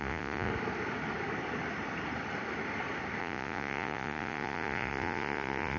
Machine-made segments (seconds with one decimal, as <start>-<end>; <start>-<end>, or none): 0.0-0.5; 3.2-5.8